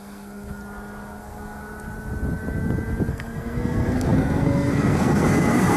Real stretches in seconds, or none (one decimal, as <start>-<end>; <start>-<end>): 0.6-1.2; 1.6-3.1